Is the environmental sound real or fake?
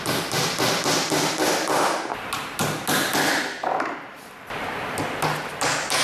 real